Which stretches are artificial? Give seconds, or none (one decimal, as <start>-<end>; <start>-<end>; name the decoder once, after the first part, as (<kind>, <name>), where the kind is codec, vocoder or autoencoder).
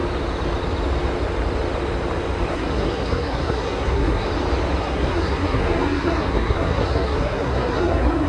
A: 2.5-4.3 (codec, SNAC); 4.8-8.3